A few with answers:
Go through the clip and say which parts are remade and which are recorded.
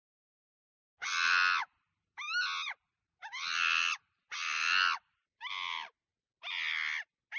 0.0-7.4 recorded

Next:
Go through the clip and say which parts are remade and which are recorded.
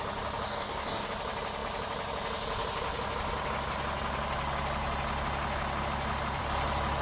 0.0-0.5 recorded; 0.5-1.1 remade; 1.1-7.0 recorded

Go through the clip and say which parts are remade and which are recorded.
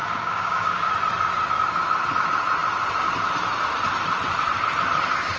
0.0-0.9 remade; 0.9-5.4 recorded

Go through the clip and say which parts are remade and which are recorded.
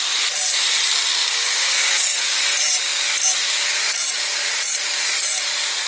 0.0-1.1 recorded; 1.1-2.4 remade; 2.4-5.9 recorded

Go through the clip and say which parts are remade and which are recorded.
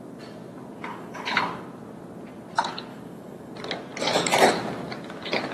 0.0-0.9 recorded; 0.9-1.4 remade; 1.4-2.9 recorded; 2.9-3.5 remade; 3.5-5.5 recorded